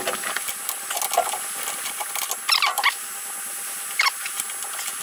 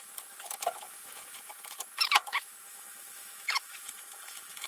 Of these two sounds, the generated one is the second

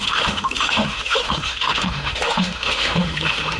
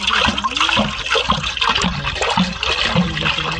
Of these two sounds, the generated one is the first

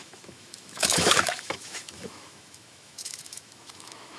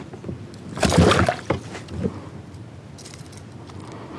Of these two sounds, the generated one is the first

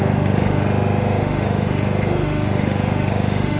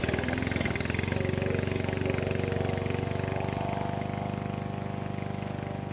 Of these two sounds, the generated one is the first